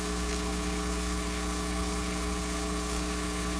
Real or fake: fake